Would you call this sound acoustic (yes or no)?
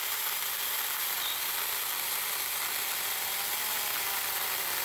yes